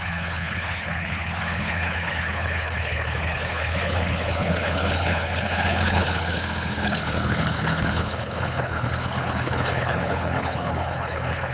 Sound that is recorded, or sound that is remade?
remade